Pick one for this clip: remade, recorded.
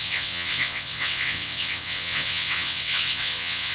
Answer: remade